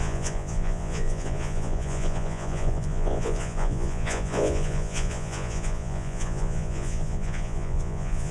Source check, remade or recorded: remade